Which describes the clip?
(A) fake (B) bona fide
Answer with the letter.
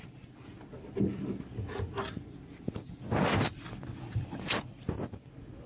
B